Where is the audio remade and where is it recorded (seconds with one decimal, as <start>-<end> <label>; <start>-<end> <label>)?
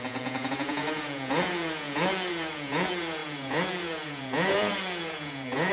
0.0-5.7 remade